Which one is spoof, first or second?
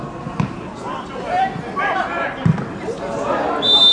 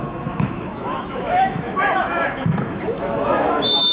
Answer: second